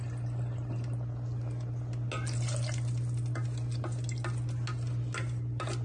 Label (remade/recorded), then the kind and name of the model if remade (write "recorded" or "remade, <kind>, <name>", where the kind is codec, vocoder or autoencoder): recorded